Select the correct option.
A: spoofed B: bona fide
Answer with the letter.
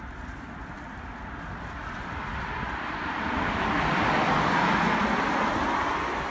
B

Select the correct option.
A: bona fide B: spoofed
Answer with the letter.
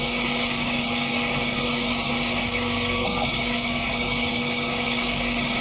B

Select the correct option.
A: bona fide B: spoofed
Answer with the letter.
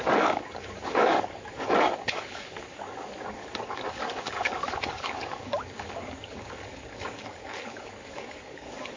B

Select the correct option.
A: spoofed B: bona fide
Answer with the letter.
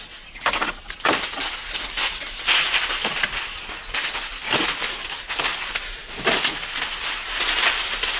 B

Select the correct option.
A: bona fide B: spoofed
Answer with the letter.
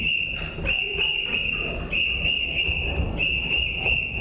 A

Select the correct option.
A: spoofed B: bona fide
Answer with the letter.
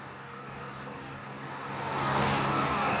A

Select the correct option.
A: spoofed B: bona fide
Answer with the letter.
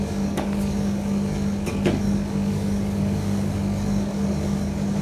A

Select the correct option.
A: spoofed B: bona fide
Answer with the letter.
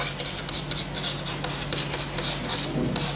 B